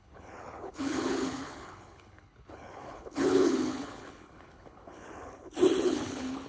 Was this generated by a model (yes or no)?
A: yes